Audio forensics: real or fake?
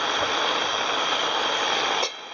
real